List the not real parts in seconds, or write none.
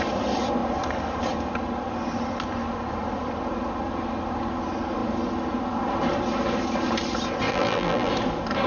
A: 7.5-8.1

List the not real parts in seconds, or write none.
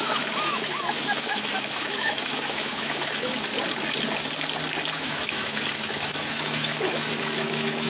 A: 0.0-3.5; 4.9-7.9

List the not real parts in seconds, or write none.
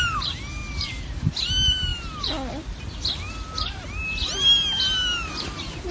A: none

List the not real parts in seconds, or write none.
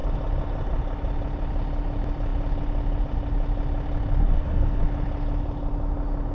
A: 4.2-4.8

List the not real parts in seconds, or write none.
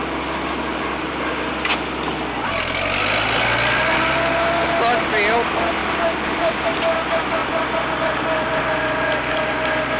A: 0.7-1.5; 5.8-6.5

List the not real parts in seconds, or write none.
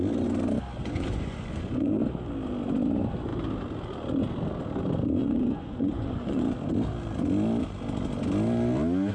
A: 0.8-2.0; 5.2-6.4